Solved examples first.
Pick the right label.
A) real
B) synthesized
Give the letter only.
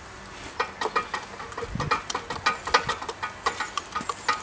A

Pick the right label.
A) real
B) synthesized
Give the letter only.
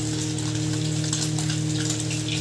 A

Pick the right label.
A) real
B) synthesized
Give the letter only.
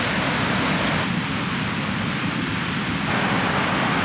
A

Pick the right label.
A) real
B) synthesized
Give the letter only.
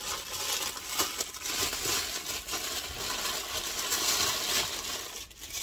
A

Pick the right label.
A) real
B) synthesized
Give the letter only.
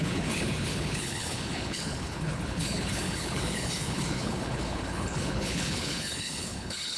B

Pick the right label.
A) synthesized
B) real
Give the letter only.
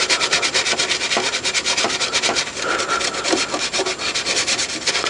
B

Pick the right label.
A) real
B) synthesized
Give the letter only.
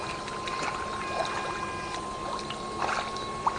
A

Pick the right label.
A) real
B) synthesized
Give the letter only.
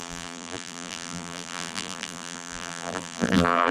B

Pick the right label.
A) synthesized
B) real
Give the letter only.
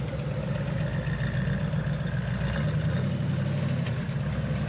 B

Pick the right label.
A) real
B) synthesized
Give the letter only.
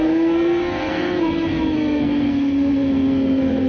B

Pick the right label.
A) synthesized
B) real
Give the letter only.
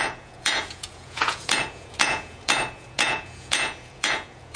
A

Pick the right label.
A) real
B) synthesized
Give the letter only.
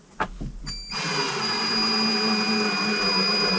A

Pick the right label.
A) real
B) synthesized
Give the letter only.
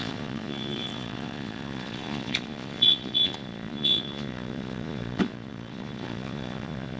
B